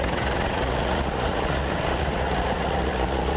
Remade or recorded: remade